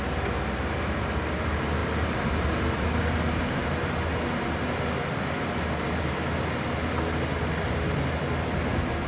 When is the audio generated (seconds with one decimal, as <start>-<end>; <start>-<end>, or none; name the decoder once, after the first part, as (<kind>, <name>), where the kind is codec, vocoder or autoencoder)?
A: none